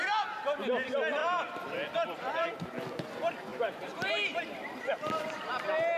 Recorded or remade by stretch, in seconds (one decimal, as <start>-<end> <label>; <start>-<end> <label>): 0.0-1.2 recorded; 1.2-2.3 remade; 2.3-3.5 recorded; 3.5-5.6 remade; 5.6-6.0 recorded